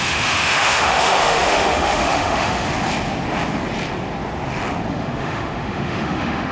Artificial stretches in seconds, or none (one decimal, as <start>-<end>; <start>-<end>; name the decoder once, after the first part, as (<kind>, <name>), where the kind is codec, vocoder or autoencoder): 0.0-2.7 (autoencoder, DAC-VAE); 4.9-6.5

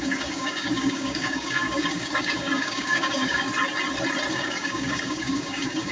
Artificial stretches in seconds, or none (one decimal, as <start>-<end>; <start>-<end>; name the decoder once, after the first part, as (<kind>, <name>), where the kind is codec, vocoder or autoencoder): 0.0-3.5 (codec, DAC); 4.3-5.9

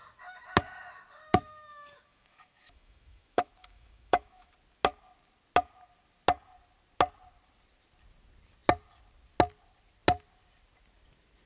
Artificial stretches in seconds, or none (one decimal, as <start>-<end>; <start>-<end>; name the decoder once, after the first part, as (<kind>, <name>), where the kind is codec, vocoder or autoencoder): 1.3-4.5 (autoencoder, DAC-VAE)

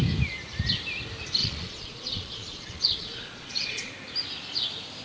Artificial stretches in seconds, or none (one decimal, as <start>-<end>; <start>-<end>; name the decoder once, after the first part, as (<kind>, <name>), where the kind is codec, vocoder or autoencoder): 1.4-3.9 (vocoder, Vocos)

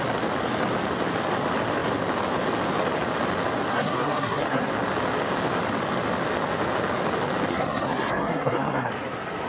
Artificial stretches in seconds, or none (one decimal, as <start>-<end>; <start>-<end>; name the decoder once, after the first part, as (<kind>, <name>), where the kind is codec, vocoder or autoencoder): 3.7-4.7 (codec, SNAC); 7.5-8.9

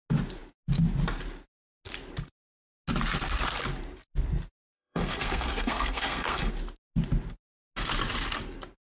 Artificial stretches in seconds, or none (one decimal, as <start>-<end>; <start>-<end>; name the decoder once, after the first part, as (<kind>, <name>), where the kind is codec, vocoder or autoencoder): 4.6-6.5 (codec, SNAC)

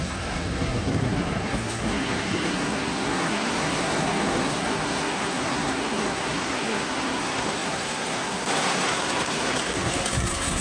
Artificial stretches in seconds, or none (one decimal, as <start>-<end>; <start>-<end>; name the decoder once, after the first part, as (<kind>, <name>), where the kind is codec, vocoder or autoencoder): 0.0-10.6 (codec, SNAC)

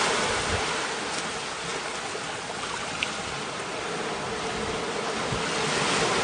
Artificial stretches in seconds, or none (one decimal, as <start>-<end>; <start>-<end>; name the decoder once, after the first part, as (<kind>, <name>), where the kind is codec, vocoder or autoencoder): 1.7-3.2 (vocoder, BigVGAN v2)